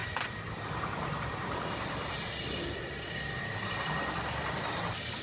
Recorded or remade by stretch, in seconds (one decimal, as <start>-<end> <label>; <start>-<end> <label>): 0.0-5.2 remade